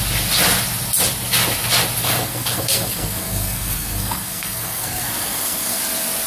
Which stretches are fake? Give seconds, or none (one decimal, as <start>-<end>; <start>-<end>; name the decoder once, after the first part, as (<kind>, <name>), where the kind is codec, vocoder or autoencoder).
2.0-5.8 (codec, SNAC)